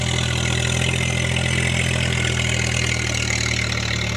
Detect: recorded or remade recorded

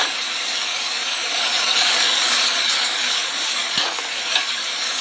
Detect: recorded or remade remade